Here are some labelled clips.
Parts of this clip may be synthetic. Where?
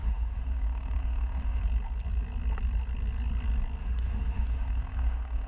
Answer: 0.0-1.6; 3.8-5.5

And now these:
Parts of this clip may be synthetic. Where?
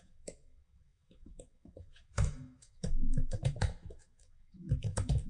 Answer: 0.0-5.3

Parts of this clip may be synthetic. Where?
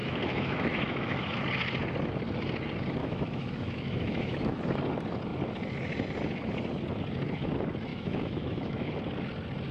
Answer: 0.0-1.4; 3.0-4.6; 7.9-8.9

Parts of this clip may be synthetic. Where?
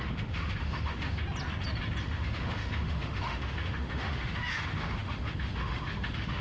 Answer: 0.0-1.2; 2.0-6.4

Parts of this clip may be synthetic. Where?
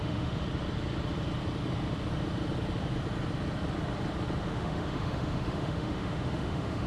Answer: 0.0-0.4; 4.5-6.9